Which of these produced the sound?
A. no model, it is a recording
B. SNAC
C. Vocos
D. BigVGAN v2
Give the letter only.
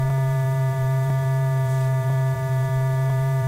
D